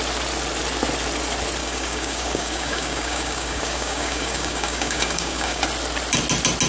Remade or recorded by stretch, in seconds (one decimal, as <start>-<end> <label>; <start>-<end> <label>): 0.0-1.6 recorded; 1.6-5.6 remade; 5.6-6.7 recorded